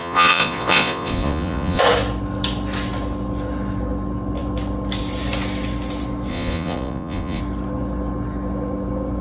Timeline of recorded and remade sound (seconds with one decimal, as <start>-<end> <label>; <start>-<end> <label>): 0.0-1.8 remade; 1.8-6.3 recorded; 6.3-7.4 remade; 7.4-9.2 recorded